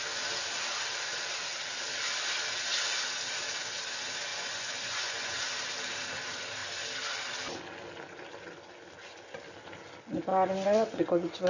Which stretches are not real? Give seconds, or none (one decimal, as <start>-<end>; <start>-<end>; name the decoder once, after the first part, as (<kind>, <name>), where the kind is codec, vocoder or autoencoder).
4.3-5.4 (vocoder, Vocos); 10.3-11.5